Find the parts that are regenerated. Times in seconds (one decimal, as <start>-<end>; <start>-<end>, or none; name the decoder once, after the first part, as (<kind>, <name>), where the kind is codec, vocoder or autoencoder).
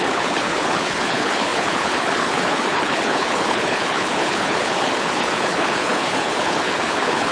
0.0-7.3 (codec, HILCodec)